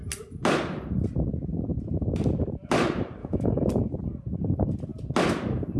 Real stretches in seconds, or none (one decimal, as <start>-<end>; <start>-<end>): 0.0-3.2; 3.7-5.8